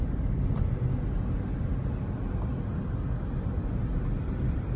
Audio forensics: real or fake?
real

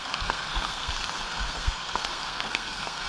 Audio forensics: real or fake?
fake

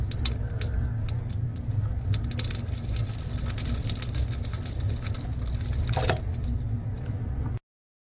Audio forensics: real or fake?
real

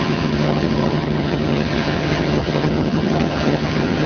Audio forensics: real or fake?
fake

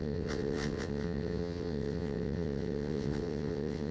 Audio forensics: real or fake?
fake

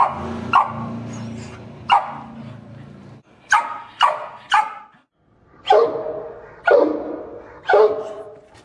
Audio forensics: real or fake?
real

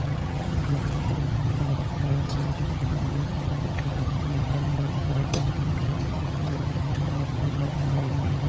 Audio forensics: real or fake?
fake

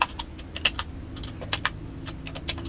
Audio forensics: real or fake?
real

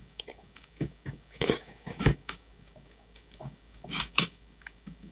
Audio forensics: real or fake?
fake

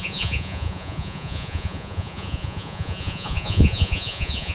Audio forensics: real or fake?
fake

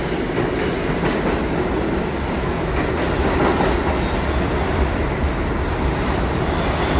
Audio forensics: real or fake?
real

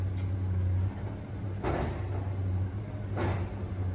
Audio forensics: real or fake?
real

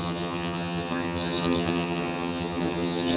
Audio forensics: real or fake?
fake